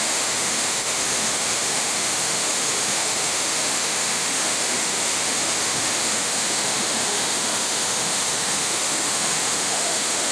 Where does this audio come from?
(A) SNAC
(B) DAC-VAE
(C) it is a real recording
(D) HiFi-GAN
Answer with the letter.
B